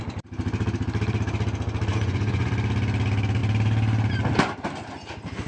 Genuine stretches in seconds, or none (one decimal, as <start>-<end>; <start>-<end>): 0.0-1.9; 2.5-5.5